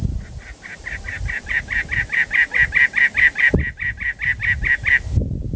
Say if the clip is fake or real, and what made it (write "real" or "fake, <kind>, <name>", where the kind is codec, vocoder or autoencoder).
real